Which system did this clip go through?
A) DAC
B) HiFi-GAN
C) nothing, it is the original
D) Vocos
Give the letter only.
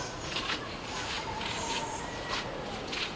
D